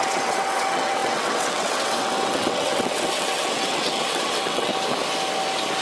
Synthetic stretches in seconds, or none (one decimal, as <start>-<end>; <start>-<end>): 0.0-4.7